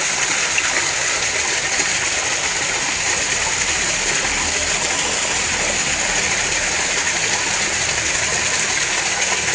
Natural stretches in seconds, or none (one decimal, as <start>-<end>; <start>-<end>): 0.0-9.5